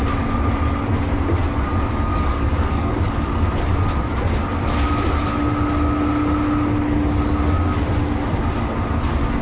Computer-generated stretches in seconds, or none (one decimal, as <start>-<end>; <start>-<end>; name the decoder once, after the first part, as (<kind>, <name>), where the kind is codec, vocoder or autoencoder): 2.1-3.5 (codec, DAC)

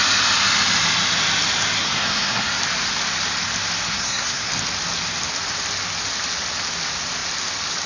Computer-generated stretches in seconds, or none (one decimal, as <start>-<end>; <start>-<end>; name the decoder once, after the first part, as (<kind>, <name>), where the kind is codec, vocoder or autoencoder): 1.8-2.6 (codec, SNAC); 3.9-4.5